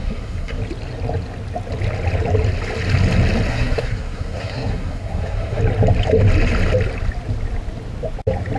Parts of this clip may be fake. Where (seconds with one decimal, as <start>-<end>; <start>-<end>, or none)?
0.0-0.6; 3.5-5.6